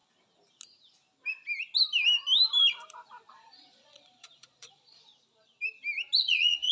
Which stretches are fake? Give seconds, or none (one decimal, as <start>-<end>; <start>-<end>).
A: 3.3-5.1; 6.2-6.7